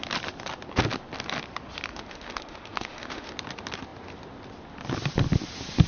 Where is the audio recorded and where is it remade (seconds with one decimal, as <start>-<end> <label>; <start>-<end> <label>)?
0.0-1.9 recorded; 1.9-3.3 remade; 3.3-5.9 recorded